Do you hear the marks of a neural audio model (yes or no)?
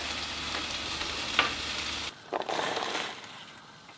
no